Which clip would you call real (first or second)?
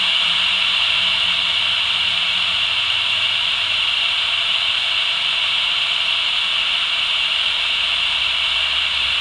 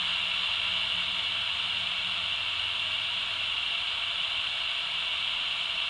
second